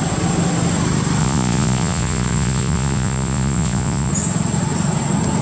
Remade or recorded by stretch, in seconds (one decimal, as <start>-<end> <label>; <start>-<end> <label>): 0.0-1.2 recorded; 1.2-4.1 remade; 4.1-5.4 recorded